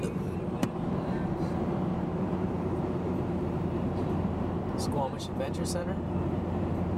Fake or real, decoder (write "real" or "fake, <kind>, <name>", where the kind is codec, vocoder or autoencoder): fake, vocoder, BigVGAN v2